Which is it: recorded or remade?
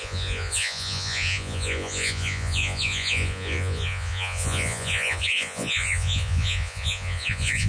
remade